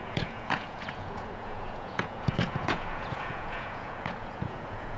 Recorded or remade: remade